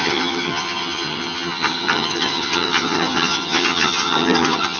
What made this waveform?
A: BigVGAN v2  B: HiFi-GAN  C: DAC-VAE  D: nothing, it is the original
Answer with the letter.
B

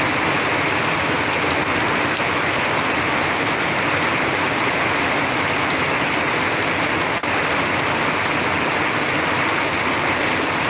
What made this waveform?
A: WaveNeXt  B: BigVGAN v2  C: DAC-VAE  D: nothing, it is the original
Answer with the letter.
D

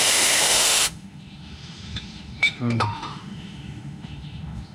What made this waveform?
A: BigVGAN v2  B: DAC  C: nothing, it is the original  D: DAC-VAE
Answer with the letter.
D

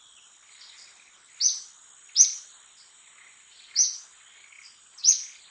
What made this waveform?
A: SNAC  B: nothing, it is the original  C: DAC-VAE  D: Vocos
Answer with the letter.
B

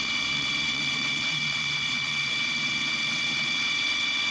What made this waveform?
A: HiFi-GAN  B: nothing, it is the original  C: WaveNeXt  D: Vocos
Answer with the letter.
C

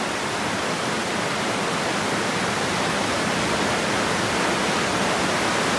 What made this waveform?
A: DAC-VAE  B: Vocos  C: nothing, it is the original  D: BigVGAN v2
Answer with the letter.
C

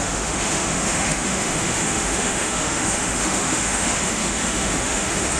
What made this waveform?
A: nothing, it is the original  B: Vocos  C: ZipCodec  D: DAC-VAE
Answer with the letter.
D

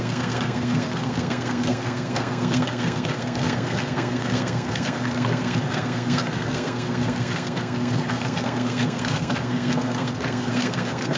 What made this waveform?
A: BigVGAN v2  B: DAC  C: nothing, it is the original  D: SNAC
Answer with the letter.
D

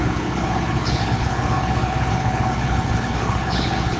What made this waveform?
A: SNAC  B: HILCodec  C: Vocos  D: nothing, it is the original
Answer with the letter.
B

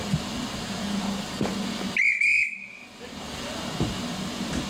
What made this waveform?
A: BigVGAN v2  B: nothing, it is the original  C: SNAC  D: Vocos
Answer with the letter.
B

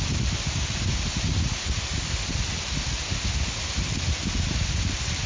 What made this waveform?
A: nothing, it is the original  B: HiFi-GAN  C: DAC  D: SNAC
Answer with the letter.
A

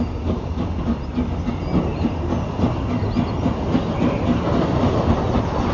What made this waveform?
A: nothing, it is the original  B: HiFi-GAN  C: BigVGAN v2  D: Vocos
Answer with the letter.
A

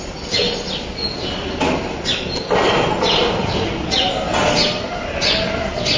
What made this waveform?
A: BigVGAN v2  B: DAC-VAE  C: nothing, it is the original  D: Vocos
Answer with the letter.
C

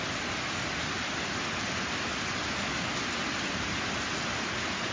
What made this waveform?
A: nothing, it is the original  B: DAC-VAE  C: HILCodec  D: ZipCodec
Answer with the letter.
A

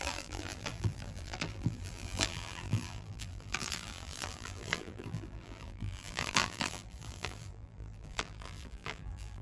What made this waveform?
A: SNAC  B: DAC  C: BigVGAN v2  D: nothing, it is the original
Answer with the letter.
C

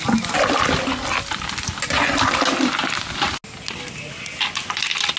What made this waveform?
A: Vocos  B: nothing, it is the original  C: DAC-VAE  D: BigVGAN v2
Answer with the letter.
B